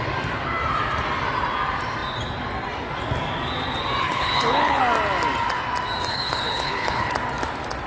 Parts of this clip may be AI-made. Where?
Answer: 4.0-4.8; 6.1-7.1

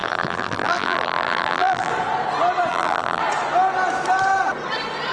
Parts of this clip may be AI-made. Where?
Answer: 0.0-1.9; 2.7-3.2

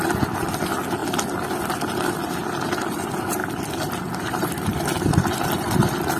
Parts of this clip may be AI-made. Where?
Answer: 3.4-6.2